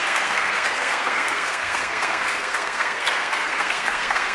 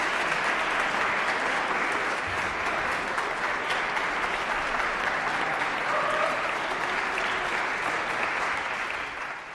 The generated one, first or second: first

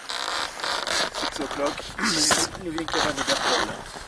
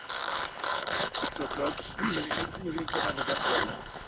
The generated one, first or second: second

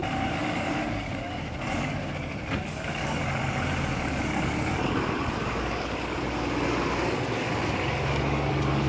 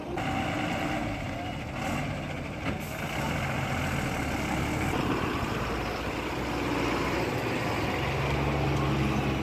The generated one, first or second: first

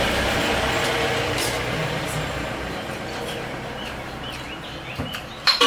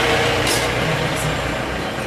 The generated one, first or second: first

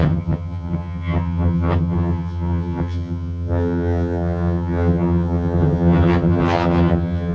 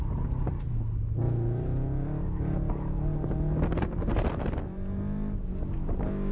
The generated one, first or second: first